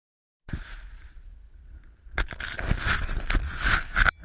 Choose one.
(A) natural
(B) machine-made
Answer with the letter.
A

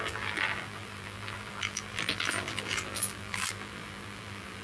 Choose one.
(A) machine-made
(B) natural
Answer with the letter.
A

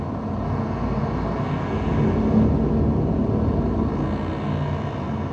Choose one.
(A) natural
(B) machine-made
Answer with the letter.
A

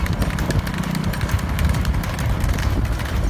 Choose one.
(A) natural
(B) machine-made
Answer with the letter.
A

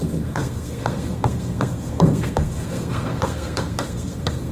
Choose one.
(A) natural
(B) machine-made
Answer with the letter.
B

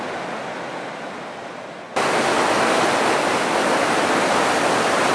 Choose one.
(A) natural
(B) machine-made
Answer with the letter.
A